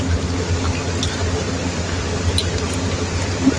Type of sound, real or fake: real